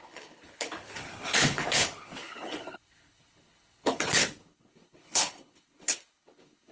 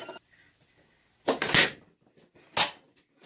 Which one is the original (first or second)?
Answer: second